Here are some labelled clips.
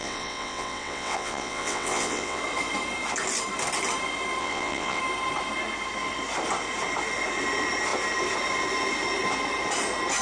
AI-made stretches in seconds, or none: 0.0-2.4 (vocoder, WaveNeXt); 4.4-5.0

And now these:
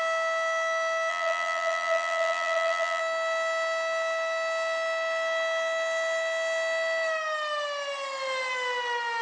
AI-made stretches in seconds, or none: 1.1-3.0 (vocoder, BigVGAN v2)

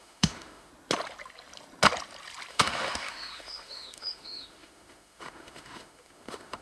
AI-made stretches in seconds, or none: 0.0-0.7 (autoencoder, DAC-VAE); 2.5-6.6